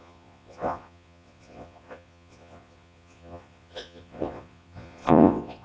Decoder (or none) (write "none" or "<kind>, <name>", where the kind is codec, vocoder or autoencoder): vocoder, Vocos